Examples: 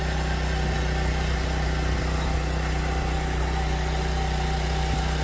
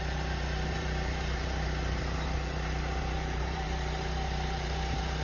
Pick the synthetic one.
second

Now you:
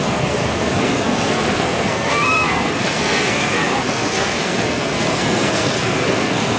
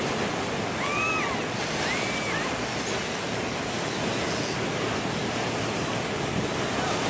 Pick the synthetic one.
first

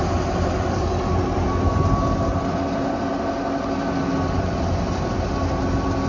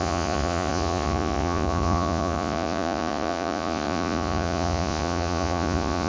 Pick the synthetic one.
second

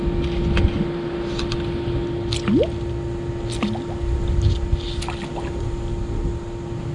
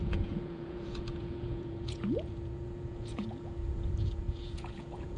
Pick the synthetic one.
second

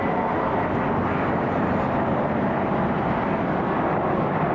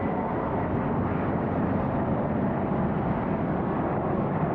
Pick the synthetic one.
second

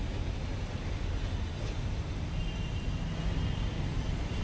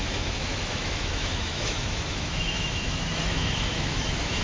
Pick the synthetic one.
second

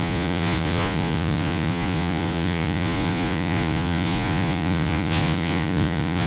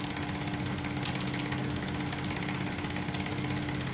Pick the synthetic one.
first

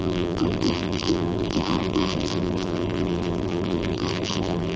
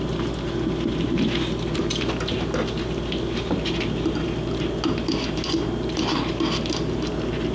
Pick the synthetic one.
first